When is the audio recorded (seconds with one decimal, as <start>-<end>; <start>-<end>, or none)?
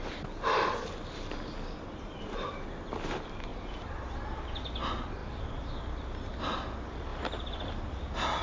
0.0-1.9; 2.5-3.5; 4.0-7.1; 7.8-8.4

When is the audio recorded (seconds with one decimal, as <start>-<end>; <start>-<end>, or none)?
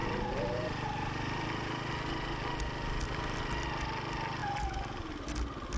1.9-4.4; 5.3-5.8